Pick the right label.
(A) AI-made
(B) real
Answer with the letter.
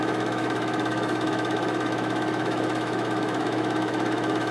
A